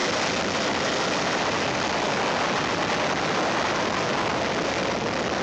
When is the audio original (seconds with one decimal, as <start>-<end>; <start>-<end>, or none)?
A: 0.0-5.4